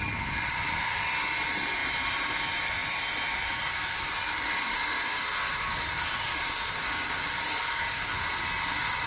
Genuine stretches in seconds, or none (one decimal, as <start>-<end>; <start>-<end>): 0.0-4.7; 8.3-9.1